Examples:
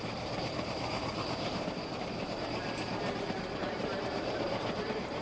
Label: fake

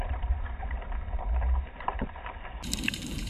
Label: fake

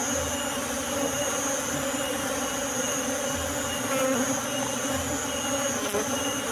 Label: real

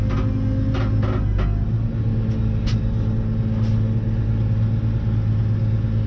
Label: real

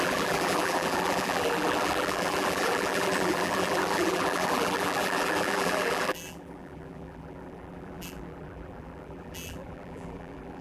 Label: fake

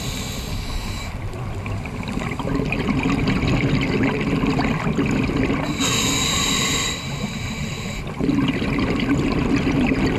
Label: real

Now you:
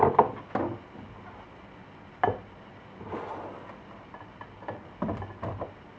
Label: real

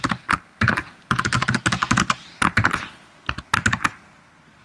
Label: real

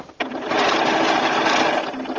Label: fake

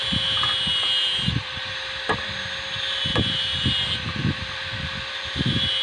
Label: real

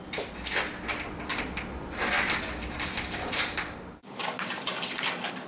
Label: real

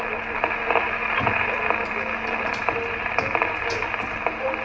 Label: fake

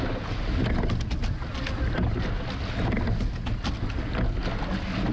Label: real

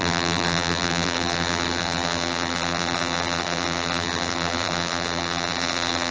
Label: fake